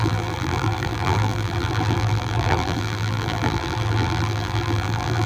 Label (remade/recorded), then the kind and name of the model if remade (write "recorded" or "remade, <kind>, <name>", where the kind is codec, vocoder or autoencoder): remade, vocoder, BigVGAN v2